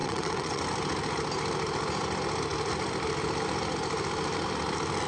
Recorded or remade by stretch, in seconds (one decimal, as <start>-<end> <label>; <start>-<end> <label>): 0.0-0.6 remade; 0.6-5.1 recorded